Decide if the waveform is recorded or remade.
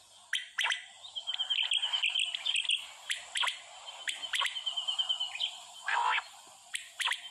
recorded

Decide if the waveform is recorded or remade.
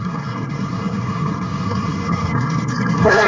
remade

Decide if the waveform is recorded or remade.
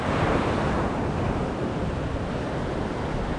recorded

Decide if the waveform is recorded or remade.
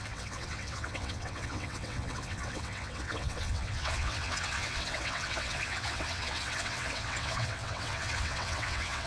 remade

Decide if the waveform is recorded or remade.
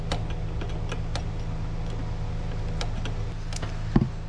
recorded